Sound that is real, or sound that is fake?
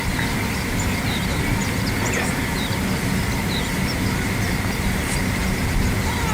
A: real